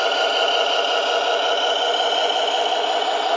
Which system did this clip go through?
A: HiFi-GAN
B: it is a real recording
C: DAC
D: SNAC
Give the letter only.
B